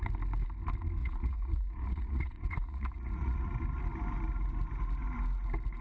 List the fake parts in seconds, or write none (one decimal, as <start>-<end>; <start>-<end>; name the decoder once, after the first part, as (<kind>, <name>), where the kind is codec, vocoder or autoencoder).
1.0-3.5 (vocoder, Vocos)